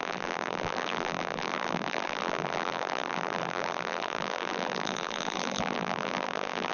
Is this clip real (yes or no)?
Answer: no